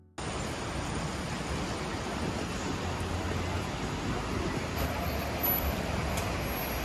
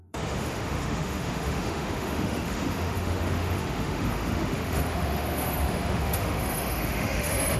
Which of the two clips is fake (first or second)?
second